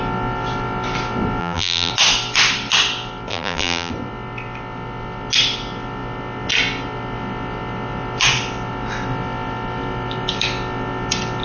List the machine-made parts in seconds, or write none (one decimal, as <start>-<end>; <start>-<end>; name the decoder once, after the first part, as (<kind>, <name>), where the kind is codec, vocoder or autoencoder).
1.4-1.9 (vocoder, BigVGAN v2); 3.3-3.9